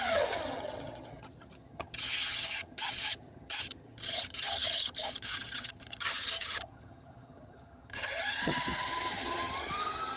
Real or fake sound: fake